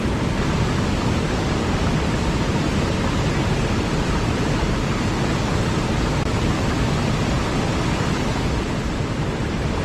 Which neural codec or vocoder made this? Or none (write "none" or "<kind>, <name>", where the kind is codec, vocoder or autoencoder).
none